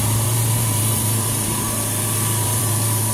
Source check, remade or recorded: remade